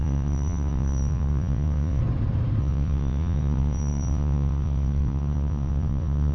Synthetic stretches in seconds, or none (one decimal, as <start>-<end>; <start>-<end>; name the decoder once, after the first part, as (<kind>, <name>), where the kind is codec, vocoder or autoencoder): 0.0-2.0 (vocoder, WaveNeXt); 2.6-6.3